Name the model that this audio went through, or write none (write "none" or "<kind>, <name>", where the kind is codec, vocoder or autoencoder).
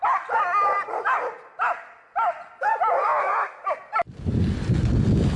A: vocoder, BigVGAN v2